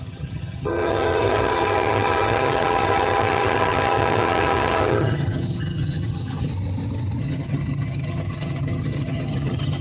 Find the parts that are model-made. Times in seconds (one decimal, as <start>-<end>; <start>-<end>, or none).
0.0-6.5; 7.2-9.8

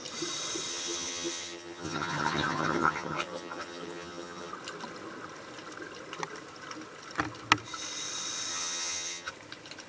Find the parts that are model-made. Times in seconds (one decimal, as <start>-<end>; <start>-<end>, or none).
0.7-4.5; 8.5-9.3